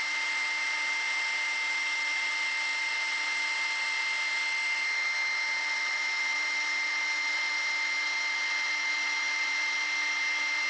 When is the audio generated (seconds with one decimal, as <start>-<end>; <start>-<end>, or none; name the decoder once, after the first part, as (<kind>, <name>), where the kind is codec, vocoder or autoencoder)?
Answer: none